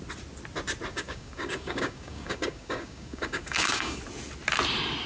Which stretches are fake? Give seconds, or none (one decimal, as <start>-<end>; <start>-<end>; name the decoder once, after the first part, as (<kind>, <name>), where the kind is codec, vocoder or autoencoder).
0.9-4.0 (codec, DAC)